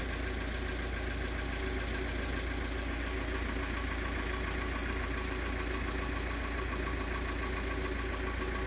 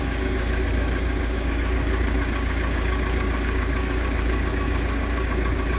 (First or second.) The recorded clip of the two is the first